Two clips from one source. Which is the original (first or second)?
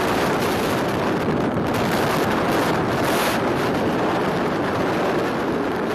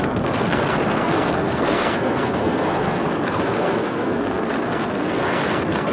first